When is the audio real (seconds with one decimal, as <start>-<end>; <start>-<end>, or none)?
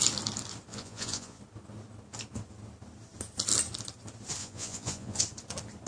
0.0-0.7; 1.4-4.4; 5.2-5.9